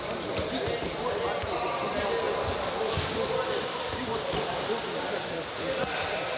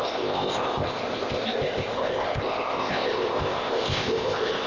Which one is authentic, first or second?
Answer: first